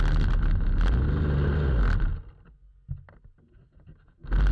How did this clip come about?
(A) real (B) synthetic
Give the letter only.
A